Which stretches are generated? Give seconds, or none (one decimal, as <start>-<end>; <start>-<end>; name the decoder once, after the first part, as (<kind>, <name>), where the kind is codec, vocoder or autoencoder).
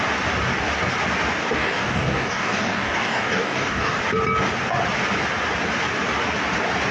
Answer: 1.4-4.0 (codec, DAC)